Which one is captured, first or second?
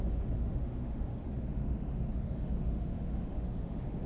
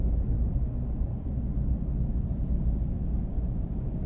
second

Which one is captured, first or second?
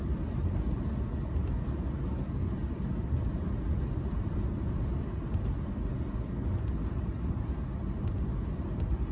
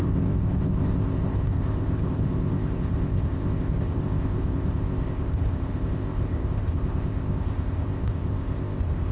first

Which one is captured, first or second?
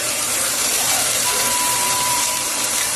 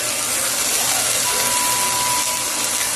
second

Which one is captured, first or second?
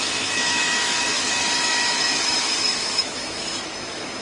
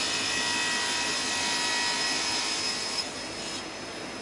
second